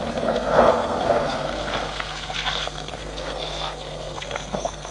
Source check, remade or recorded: remade